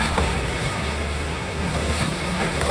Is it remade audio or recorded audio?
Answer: remade